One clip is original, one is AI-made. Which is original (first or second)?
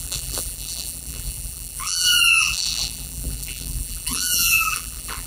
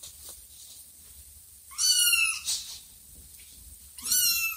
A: second